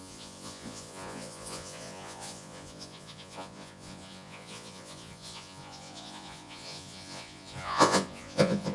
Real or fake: fake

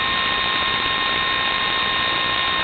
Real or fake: real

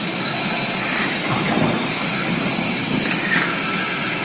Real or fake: real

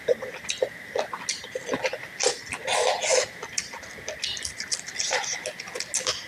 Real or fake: real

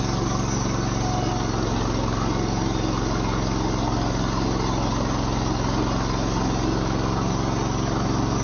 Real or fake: real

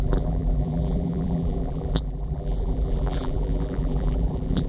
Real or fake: fake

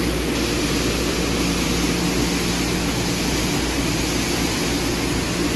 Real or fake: real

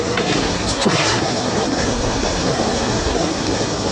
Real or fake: fake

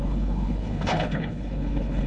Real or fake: fake